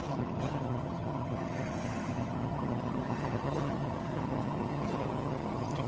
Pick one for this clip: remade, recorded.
remade